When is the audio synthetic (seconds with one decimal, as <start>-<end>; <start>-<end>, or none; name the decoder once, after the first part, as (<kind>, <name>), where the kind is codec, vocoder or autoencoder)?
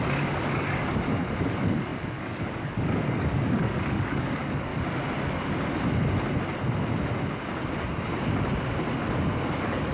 0.0-4.7 (codec, DAC); 9.5-9.9